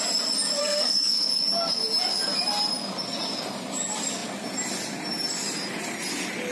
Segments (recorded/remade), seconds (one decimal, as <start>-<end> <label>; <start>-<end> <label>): 0.0-0.6 recorded; 0.6-1.3 remade; 1.3-6.5 recorded